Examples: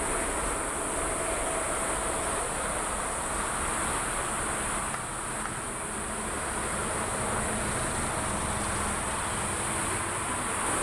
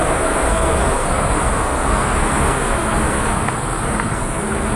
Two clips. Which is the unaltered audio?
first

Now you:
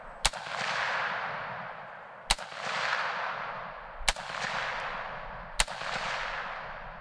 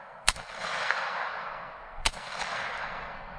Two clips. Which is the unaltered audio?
first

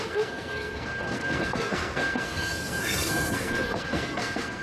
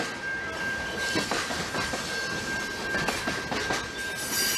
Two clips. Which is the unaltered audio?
second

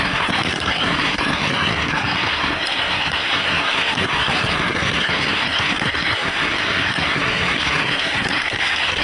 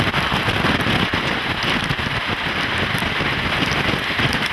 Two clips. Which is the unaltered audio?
second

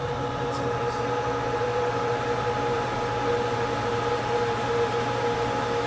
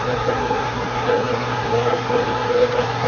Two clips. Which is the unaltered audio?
first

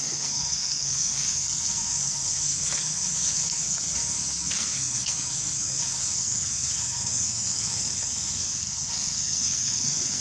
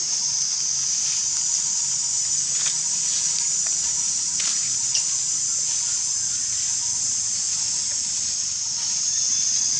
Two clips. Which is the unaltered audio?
second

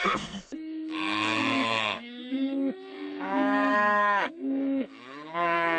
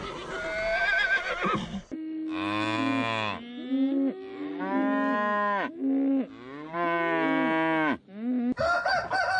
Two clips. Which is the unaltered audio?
second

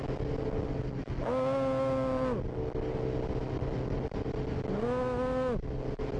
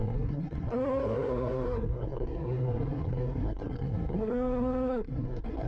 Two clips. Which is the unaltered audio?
first